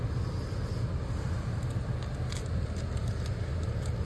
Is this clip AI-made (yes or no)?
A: no